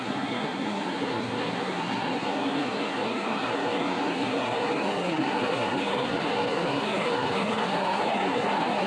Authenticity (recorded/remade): remade